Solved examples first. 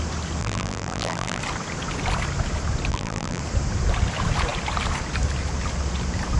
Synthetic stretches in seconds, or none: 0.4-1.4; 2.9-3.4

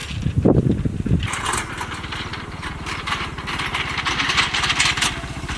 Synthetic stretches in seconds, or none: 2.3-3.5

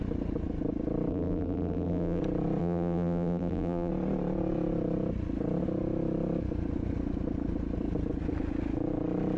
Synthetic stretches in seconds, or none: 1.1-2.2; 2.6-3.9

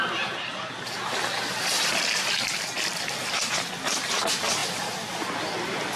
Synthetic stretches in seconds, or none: none